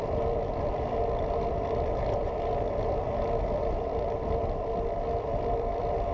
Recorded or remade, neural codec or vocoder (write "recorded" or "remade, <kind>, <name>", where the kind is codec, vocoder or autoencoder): remade, vocoder, BigVGAN v2